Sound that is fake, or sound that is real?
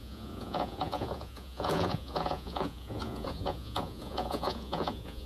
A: fake